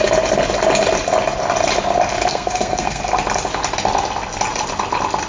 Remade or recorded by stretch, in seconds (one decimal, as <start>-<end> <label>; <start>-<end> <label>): 0.0-2.3 recorded; 2.3-3.0 remade; 3.0-5.3 recorded